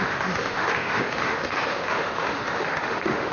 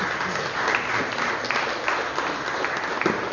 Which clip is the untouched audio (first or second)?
second